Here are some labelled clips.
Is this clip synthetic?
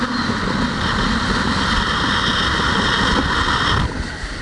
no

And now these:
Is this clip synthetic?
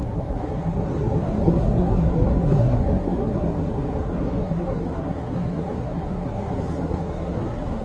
yes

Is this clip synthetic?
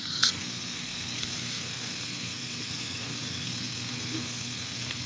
yes